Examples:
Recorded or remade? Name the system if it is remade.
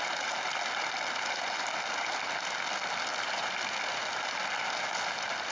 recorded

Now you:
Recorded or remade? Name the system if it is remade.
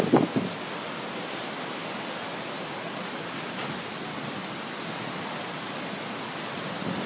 recorded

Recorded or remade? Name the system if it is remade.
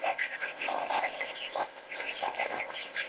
remade, codec, ZipCodec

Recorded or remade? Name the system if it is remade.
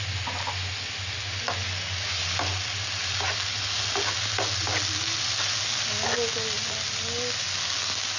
recorded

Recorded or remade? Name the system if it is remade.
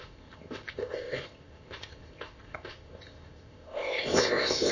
remade, codec, ZipCodec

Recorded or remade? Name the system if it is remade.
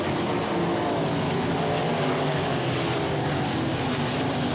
recorded